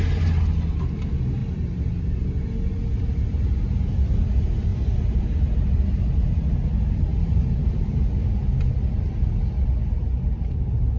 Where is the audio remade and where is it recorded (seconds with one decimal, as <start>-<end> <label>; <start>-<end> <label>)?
0.0-1.4 recorded; 1.4-2.0 remade; 2.0-4.7 recorded; 4.7-5.6 remade; 5.6-11.0 recorded